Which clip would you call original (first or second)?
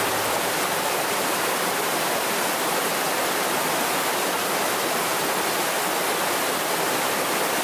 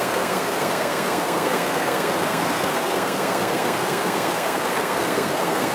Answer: first